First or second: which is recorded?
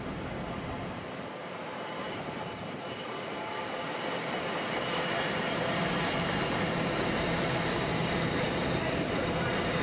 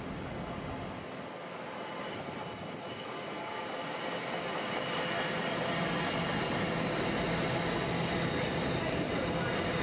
second